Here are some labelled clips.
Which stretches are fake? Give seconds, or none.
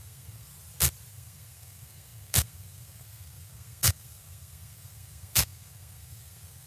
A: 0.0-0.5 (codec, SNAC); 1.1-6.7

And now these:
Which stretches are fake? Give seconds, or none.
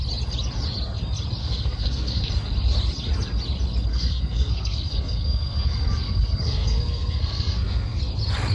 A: 1.4-2.3 (codec, SNAC); 3.9-8.0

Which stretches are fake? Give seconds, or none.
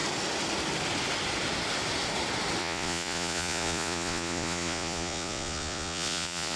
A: 2.6-6.6 (vocoder, Vocos)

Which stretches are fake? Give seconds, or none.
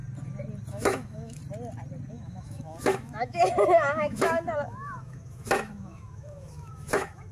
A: 0.7-1.4 (autoencoder, DAC-VAE); 2.1-7.3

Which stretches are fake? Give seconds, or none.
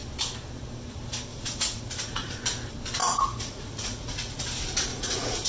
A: 1.3-2.4 (vocoder, Vocos); 3.0-4.4; 4.9-5.5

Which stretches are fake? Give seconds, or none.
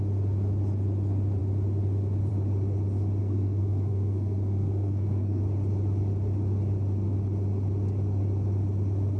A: 3.2-5.4 (codec, SNAC)